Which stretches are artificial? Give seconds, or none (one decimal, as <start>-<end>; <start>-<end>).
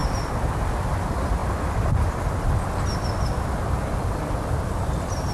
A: none